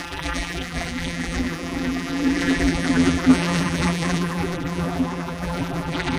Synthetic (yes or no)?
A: yes